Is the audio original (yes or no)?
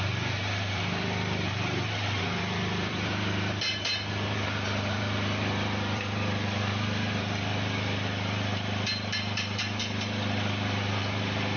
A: no